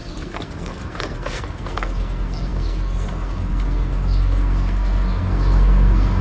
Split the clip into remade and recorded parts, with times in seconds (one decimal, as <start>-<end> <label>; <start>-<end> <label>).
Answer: 0.0-6.2 remade